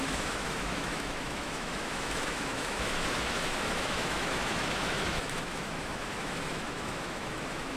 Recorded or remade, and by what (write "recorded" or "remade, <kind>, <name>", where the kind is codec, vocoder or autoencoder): remade, autoencoder, DAC-VAE